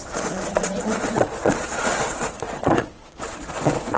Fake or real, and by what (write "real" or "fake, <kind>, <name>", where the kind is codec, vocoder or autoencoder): fake, vocoder, Vocos